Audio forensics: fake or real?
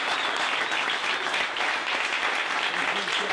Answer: real